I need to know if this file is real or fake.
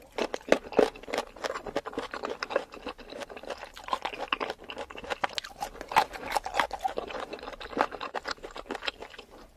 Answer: real